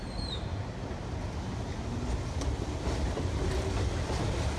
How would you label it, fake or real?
real